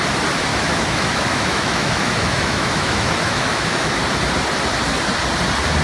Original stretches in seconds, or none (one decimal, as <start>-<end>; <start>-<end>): 0.0-0.5; 4.0-5.8